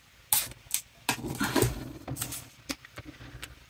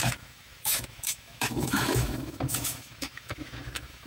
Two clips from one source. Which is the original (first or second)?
first